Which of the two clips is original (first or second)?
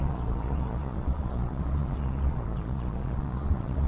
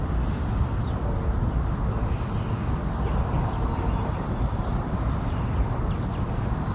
second